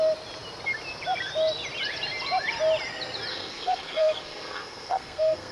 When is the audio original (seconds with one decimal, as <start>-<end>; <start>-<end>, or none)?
0.0-3.3